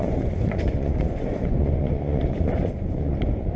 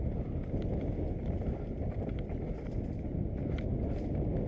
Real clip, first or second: second